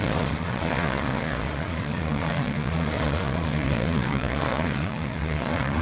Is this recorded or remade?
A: remade